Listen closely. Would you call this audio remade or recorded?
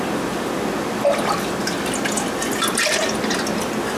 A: recorded